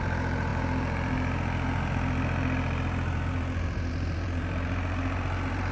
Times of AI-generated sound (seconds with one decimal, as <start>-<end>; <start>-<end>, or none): 0.0-5.7